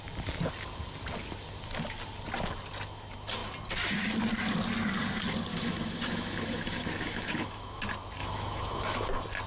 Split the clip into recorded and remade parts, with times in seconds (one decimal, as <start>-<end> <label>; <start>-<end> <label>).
0.0-5.5 recorded; 5.5-7.8 remade; 7.8-8.2 recorded; 8.2-9.1 remade; 9.1-9.5 recorded